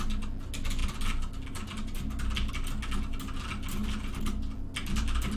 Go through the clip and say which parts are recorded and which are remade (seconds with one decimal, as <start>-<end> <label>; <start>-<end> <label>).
0.0-5.4 recorded